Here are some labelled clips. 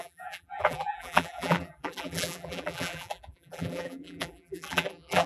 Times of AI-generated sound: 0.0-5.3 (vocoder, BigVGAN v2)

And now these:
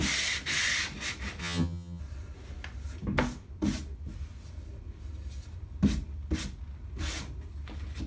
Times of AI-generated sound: 1.4-2.0 (vocoder, HiFi-GAN)

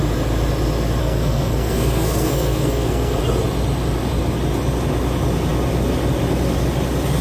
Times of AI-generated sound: 1.0-3.2 (codec, SNAC)

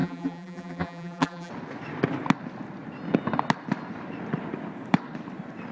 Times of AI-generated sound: 0.0-1.5 (vocoder, BigVGAN v2)

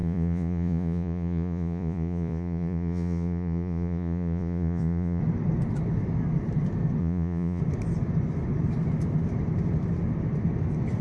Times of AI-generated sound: 0.0-5.2 (vocoder, Vocos); 7.0-7.6

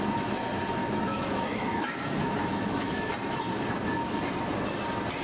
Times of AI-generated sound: 0.8-3.1 (autoencoder, DAC-VAE)

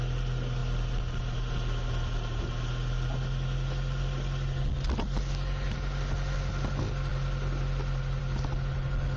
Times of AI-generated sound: none

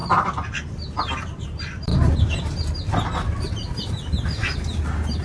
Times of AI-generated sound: 1.4-1.9 (vocoder, BigVGAN v2)